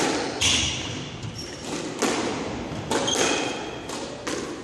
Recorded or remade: recorded